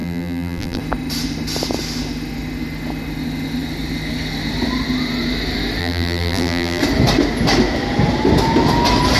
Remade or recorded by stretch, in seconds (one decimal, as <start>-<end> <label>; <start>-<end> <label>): 0.0-0.8 remade; 0.8-5.8 recorded; 5.8-6.8 remade; 6.8-9.2 recorded